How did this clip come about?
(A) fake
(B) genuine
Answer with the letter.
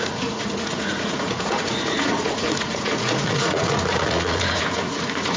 A